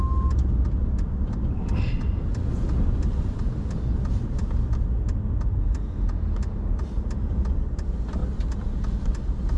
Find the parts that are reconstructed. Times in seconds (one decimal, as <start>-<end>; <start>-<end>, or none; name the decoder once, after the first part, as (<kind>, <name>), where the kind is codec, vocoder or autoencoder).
8.2-9.1 (vocoder, BigVGAN v2)